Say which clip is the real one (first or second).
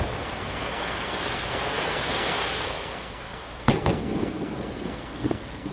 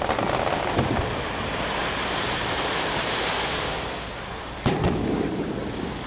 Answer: second